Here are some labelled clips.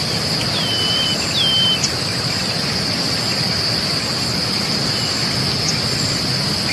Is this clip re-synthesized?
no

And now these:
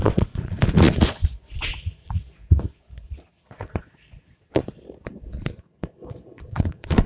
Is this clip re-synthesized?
yes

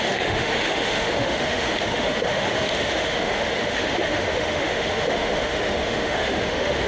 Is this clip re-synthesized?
yes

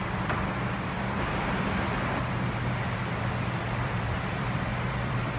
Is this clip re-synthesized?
yes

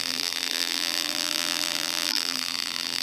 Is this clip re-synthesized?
yes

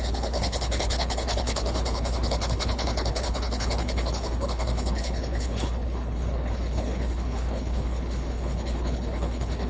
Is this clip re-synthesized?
yes